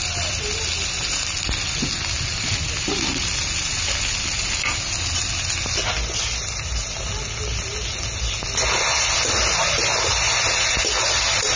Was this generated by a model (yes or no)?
no